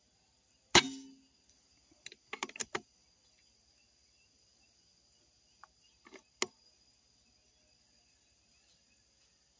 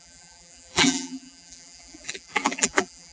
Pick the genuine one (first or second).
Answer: first